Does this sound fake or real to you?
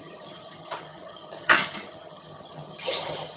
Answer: fake